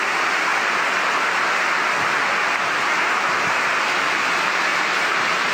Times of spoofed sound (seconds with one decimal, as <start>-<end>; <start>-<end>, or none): 4.7-5.5